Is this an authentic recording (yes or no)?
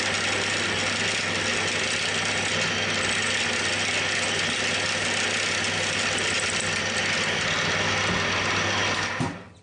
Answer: yes